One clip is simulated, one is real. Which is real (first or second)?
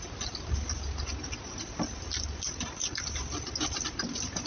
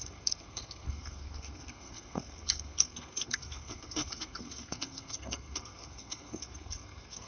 first